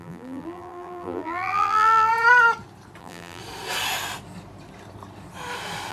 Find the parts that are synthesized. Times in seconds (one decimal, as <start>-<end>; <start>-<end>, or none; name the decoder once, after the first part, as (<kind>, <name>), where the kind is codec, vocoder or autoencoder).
0.0-2.1 (vocoder, BigVGAN v2); 3.0-3.4